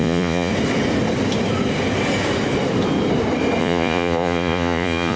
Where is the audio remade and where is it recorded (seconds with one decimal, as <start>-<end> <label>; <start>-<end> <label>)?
0.0-0.5 remade; 0.5-3.6 recorded; 3.6-5.2 remade